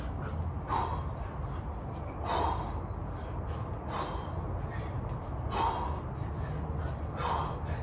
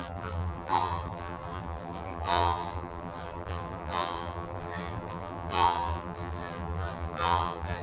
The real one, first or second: first